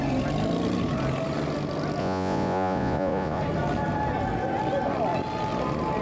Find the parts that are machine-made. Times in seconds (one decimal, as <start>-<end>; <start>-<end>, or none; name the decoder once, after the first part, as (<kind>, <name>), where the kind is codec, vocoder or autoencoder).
2.0-3.4 (vocoder, Vocos)